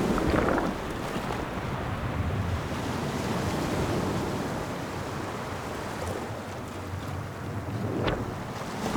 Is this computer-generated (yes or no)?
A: no